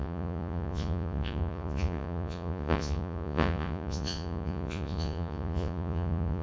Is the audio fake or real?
fake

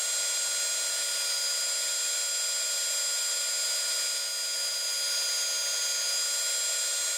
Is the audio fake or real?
real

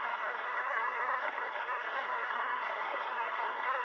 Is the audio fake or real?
fake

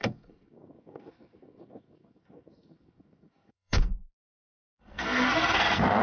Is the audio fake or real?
fake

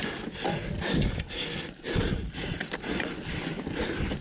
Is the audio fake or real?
real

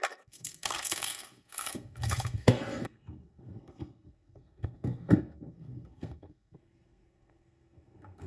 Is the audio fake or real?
fake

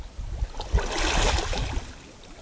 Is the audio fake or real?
real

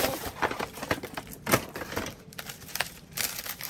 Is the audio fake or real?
real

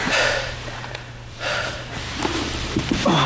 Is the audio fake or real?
fake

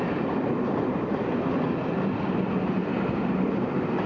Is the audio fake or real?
real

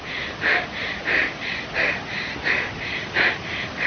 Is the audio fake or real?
real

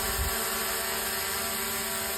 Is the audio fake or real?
real